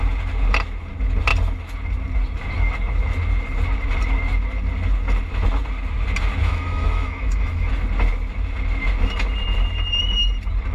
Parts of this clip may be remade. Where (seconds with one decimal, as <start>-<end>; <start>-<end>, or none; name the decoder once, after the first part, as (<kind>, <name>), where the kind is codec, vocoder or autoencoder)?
6.4-7.7 (autoencoder, DAC-VAE)